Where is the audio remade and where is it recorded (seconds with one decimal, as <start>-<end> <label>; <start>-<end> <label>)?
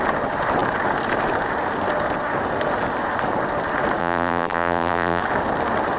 0.0-4.0 recorded; 4.0-5.2 remade; 5.2-6.0 recorded